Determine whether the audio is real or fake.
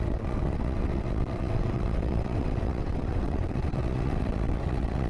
fake